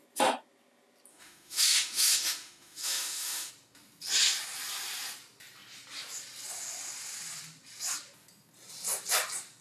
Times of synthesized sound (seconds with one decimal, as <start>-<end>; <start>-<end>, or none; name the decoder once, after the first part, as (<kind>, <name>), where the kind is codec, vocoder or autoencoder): 1.1-3.5 (autoencoder, DAC-VAE)